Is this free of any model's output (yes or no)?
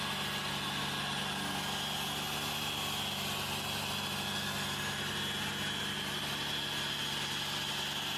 yes